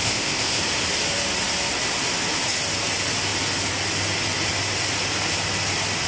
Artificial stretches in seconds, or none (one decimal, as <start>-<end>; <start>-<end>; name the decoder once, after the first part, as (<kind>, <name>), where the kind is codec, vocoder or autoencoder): 0.0-0.6 (codec, ZipCodec)